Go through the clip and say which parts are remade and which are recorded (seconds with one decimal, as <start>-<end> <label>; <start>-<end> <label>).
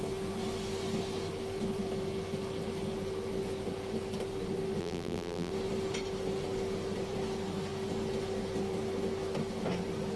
0.0-4.8 recorded; 4.8-5.5 remade; 5.5-10.2 recorded